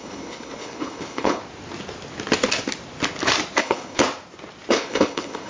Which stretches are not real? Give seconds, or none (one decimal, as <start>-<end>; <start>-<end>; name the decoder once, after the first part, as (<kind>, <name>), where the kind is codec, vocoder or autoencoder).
0.0-1.4 (codec, HILCodec); 3.6-4.0; 4.7-5.5